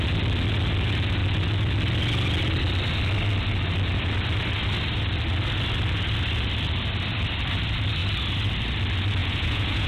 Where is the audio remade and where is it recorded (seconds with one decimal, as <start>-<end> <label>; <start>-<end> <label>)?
0.0-9.2 recorded; 9.2-9.9 remade